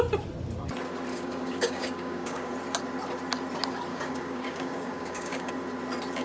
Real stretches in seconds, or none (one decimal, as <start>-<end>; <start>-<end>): 0.0-1.1; 2.5-3.9; 5.5-6.2